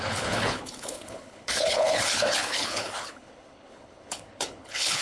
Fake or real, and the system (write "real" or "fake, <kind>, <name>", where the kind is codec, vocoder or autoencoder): fake, codec, HILCodec